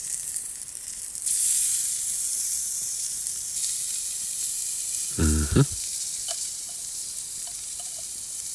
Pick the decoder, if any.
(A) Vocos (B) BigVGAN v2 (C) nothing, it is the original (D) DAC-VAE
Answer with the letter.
B